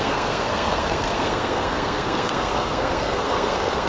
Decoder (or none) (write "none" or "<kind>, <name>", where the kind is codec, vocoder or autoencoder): codec, SNAC